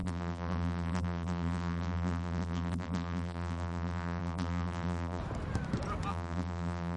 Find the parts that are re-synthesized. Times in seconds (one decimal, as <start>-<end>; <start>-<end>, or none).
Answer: 0.0-5.2; 6.1-7.0